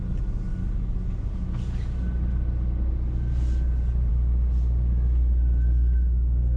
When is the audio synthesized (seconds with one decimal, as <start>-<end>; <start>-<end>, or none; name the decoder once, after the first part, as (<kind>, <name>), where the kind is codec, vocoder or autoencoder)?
none